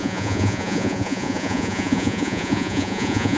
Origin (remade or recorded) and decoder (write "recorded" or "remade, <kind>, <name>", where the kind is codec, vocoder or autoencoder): remade, vocoder, Vocos